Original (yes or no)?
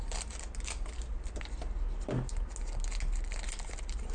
yes